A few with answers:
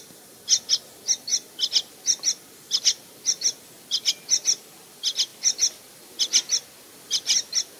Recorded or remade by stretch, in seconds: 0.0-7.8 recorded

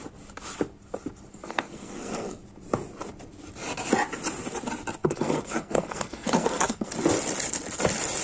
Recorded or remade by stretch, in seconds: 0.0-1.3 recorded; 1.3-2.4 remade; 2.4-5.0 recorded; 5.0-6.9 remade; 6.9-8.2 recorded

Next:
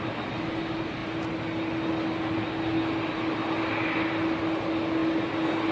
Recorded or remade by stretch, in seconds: 0.0-5.7 recorded

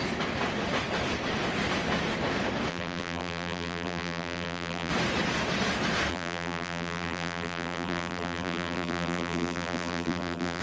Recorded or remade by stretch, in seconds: 0.0-2.7 recorded; 2.7-4.9 remade; 4.9-6.1 recorded; 6.1-10.6 remade